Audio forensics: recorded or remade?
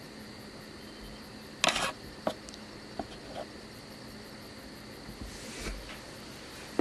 recorded